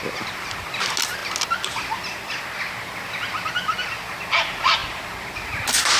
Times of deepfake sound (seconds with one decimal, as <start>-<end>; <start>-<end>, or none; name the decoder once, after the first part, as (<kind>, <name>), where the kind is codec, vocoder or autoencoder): none